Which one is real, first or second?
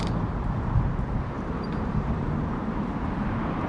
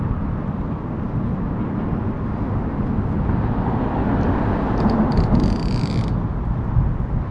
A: second